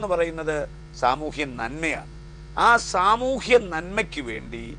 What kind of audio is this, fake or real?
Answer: fake